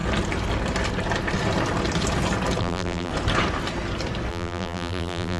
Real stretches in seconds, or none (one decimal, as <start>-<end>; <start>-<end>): 0.0-2.6; 3.1-4.3